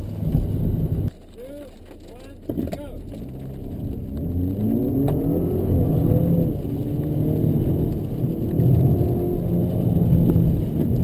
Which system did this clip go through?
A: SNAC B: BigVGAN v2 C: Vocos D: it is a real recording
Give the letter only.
D